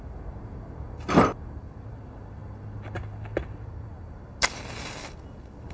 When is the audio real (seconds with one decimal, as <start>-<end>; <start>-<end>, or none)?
0.0-5.7